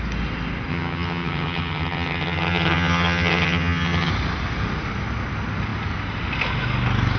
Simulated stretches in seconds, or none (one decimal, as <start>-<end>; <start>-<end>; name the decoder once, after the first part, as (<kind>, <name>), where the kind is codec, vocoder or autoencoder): 0.7-4.1 (vocoder, HiFi-GAN)